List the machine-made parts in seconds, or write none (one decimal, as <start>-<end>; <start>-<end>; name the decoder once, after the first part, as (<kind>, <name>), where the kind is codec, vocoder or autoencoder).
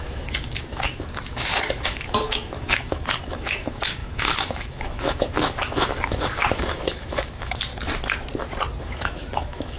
0.0-7.7 (autoencoder, DAC-VAE); 8.8-9.8